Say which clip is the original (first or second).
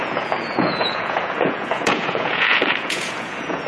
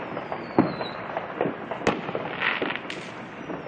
second